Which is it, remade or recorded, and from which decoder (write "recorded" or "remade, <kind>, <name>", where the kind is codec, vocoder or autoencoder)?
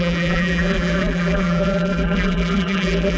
remade, vocoder, BigVGAN v2